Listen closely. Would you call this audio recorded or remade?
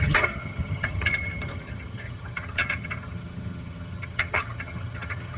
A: remade